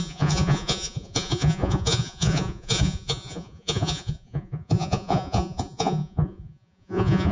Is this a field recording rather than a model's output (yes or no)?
no